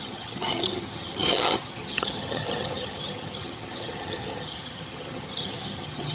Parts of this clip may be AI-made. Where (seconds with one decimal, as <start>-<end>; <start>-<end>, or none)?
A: 0.0-6.1